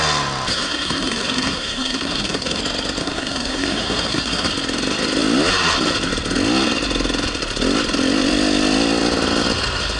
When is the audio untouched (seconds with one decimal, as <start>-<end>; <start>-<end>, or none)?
0.0-0.5; 2.6-3.0; 4.5-10.0